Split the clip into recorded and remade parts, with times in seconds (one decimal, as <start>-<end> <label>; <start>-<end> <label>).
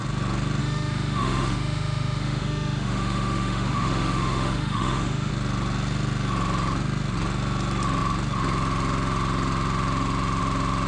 0.0-0.6 recorded; 0.6-5.3 remade; 5.3-10.9 recorded